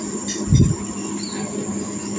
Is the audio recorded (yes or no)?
yes